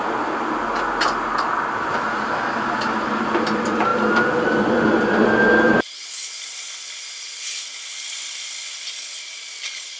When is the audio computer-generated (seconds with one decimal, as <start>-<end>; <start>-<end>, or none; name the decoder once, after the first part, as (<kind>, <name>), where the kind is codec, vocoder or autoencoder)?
3.9-6.6 (vocoder, BigVGAN v2)